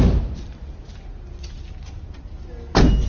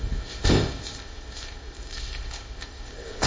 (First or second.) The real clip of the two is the first